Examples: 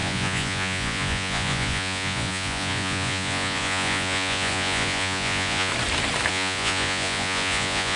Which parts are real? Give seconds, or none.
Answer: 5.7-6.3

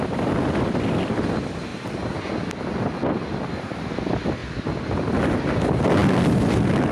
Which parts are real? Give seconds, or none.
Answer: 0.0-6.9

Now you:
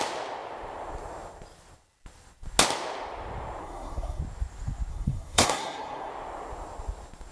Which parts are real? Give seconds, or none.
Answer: 0.0-3.6; 4.2-4.9; 6.1-7.3

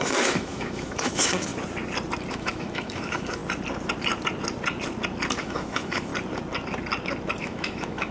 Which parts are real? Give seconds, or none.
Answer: 1.5-2.3; 3.4-5.4; 6.1-7.4

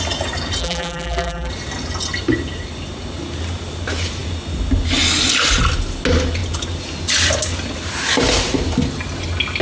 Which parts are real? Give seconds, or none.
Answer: 0.0-0.6; 1.5-9.6

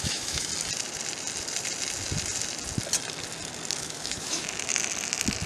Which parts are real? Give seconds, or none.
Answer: 0.5-3.8; 4.7-5.5

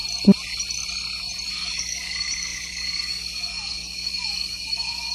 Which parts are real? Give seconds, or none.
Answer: 0.0-1.5